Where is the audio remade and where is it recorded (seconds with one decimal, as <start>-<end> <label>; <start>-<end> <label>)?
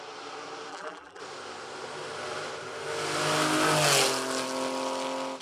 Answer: 0.0-0.7 recorded; 0.7-1.2 remade; 1.2-5.4 recorded